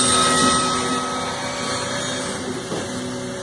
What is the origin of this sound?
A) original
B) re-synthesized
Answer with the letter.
A